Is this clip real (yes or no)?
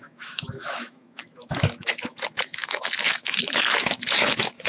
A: no